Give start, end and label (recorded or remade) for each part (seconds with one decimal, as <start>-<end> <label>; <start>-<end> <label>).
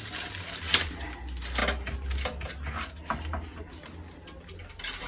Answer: 0.0-5.1 recorded